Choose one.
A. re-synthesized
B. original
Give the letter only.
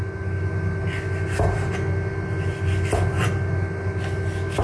B